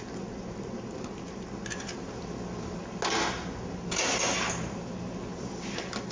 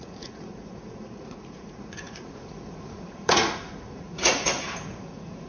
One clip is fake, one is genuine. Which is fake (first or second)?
second